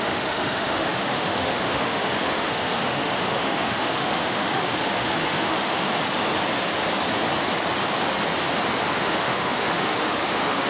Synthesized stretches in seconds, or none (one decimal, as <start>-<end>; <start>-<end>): 0.0-5.9; 8.9-10.7

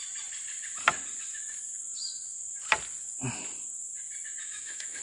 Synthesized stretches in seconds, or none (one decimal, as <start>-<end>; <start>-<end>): 4.4-5.0

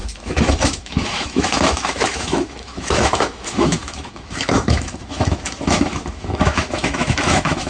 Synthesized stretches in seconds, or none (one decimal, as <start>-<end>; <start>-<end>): 0.0-7.7

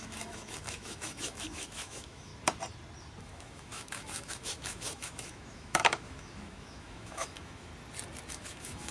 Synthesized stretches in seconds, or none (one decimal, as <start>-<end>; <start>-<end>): 0.0-2.3; 3.2-7.7; 8.3-8.9